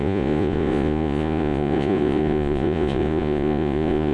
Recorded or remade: remade